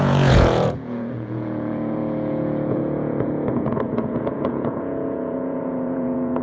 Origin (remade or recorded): remade